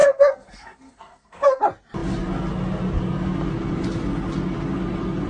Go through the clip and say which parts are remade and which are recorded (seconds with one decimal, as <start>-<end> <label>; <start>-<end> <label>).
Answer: 0.0-1.6 remade; 1.6-5.3 recorded